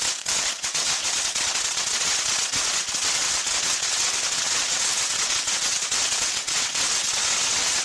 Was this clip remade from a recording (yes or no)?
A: yes